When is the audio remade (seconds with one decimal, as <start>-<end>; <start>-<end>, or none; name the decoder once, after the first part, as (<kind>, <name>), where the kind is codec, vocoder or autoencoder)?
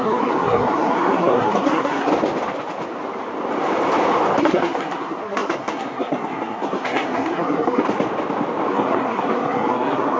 0.0-2.1 (codec, SNAC); 4.4-7.8; 8.7-10.2